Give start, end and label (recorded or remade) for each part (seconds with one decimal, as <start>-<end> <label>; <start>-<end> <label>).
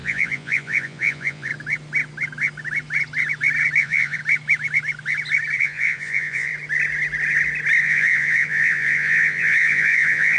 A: 0.0-1.5 remade; 1.5-3.8 recorded; 3.8-4.2 remade; 4.2-5.6 recorded; 5.6-6.5 remade; 6.5-7.8 recorded; 7.8-10.4 remade